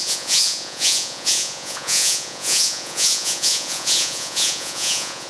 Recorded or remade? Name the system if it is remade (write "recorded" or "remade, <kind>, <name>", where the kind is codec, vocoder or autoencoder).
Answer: remade, vocoder, Vocos